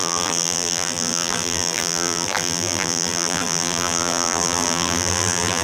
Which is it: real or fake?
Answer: fake